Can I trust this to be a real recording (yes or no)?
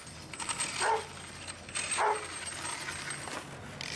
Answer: yes